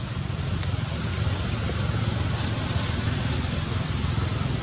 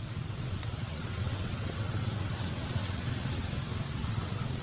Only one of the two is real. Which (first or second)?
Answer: first